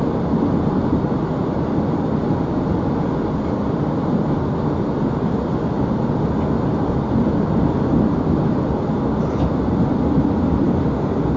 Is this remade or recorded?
recorded